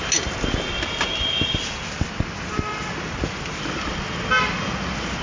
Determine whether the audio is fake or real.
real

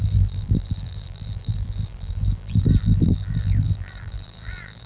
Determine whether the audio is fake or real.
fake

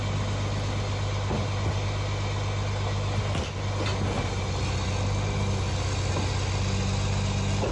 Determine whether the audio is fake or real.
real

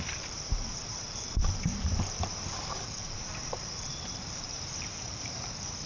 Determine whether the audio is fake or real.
fake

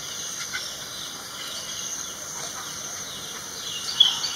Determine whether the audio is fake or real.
fake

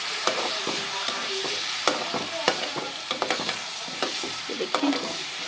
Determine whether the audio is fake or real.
fake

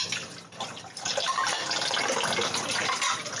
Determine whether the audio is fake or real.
real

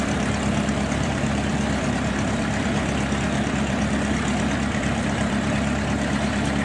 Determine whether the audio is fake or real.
fake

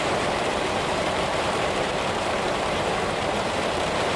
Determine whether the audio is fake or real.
fake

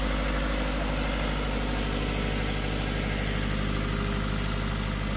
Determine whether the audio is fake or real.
real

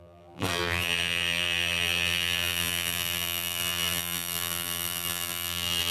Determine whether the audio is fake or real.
fake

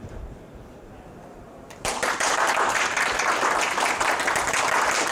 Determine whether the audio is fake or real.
fake